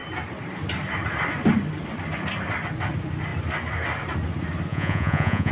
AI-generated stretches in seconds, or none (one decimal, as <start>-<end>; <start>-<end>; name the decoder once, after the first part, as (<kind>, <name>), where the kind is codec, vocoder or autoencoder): 4.7-5.5 (vocoder, Vocos)